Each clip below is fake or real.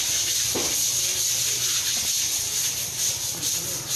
real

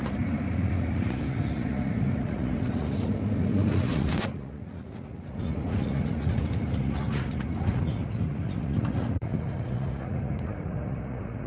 fake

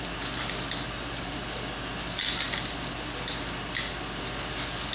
real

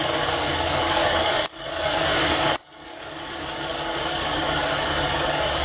fake